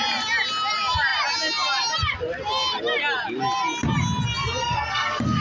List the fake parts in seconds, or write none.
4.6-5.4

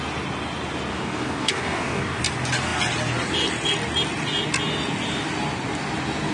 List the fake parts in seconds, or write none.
0.9-2.2

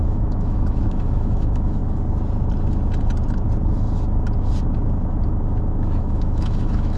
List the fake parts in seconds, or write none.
0.0-1.8; 6.0-7.0